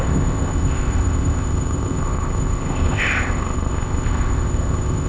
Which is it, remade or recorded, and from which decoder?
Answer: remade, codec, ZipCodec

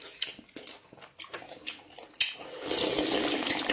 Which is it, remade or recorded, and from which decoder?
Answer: recorded